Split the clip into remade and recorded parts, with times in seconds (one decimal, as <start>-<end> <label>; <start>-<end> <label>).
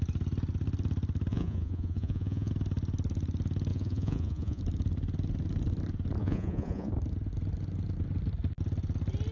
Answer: 0.0-1.3 recorded; 1.3-2.5 remade; 2.5-3.7 recorded; 3.7-4.6 remade; 4.6-6.2 recorded; 6.2-6.9 remade; 6.9-9.3 recorded